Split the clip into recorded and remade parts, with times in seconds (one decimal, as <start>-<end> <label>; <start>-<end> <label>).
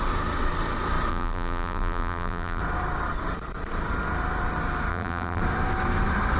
0.0-1.1 recorded; 1.1-2.6 remade; 2.6-4.9 recorded; 4.9-5.4 remade; 5.4-6.4 recorded